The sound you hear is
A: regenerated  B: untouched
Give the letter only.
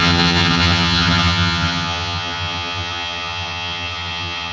A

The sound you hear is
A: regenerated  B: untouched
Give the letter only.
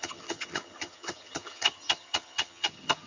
A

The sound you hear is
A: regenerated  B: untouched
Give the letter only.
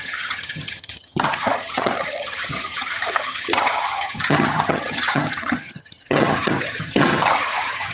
A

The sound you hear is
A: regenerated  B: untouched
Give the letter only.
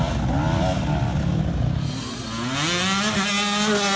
B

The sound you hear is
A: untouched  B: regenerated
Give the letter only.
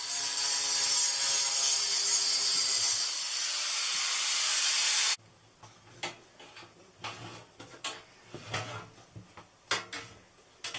A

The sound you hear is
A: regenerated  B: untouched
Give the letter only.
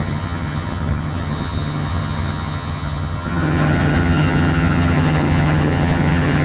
A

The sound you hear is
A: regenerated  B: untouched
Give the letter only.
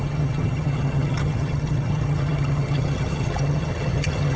A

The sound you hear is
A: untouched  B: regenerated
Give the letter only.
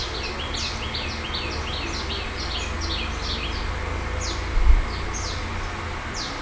A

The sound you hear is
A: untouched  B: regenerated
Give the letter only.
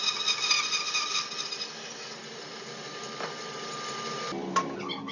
A